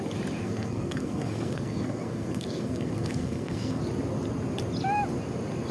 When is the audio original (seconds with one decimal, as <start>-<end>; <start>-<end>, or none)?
0.0-0.4; 3.8-5.7